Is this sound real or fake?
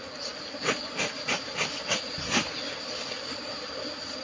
real